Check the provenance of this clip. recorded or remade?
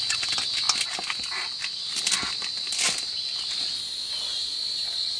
recorded